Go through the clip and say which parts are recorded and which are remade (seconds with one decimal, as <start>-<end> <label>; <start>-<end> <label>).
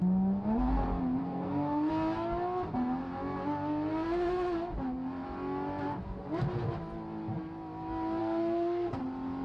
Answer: 0.0-1.2 recorded; 1.2-1.9 remade; 1.9-8.2 recorded; 8.2-9.0 remade; 9.0-9.4 recorded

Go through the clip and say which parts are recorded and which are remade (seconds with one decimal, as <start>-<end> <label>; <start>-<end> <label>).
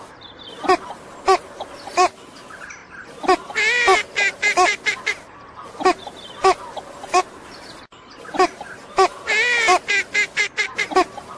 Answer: 0.0-11.4 recorded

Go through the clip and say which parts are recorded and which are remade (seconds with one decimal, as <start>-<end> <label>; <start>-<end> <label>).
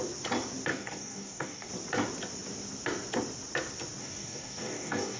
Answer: 0.0-0.7 recorded; 0.7-1.7 remade; 1.7-4.0 recorded; 4.0-5.2 remade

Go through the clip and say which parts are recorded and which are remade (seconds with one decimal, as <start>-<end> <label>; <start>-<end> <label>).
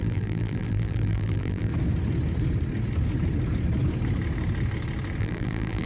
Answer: 0.0-1.7 remade; 1.7-5.2 recorded; 5.2-5.9 remade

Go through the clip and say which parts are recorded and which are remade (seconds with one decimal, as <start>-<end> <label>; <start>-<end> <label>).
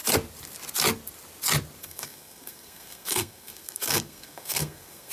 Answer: 0.0-1.8 recorded; 1.8-5.1 remade